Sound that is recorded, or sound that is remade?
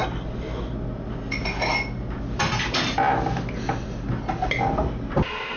recorded